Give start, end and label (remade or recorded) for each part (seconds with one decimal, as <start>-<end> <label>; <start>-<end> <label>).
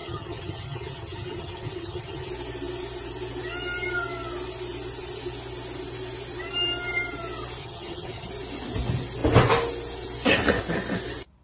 0.0-2.3 remade; 2.3-7.6 recorded; 7.6-8.3 remade; 8.3-11.4 recorded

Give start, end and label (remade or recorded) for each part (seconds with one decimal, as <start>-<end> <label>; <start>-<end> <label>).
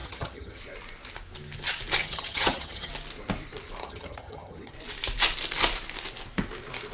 0.0-0.6 remade; 0.6-2.0 recorded; 2.0-2.9 remade; 2.9-3.8 recorded; 3.8-4.7 remade; 4.7-6.9 recorded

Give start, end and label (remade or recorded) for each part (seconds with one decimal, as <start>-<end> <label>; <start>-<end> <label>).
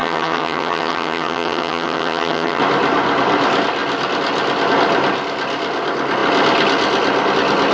0.0-2.6 remade; 2.6-7.7 recorded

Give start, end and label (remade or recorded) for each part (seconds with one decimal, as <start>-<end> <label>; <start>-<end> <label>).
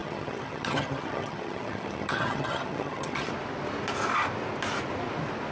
0.0-3.3 remade; 3.3-5.5 recorded